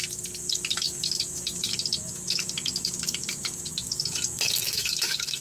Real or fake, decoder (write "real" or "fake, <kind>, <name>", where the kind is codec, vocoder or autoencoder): fake, autoencoder, DAC-VAE